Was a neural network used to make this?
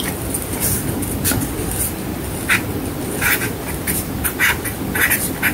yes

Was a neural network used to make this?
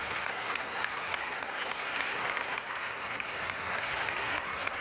yes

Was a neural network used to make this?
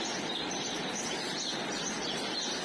no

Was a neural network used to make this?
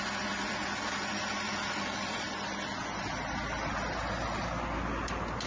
no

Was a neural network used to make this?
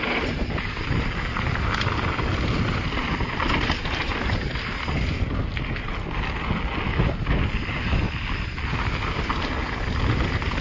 no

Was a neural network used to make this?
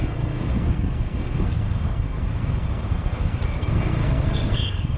yes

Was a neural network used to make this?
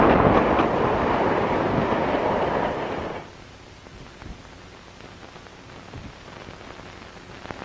no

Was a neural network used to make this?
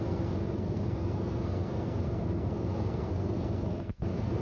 yes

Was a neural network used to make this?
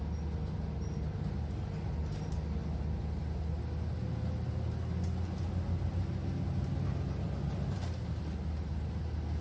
no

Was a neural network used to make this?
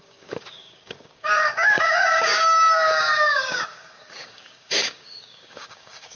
yes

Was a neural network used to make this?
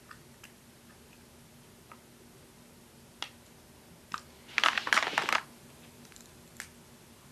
no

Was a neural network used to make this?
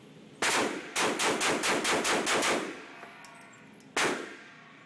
no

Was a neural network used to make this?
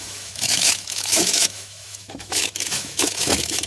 yes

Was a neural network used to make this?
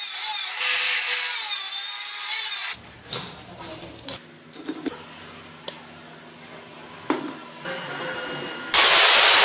no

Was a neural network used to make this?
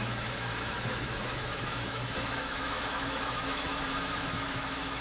yes